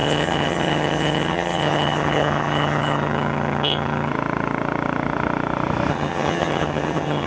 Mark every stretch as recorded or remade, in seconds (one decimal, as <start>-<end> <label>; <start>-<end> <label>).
0.0-4.1 remade; 4.1-5.9 recorded; 5.9-7.3 remade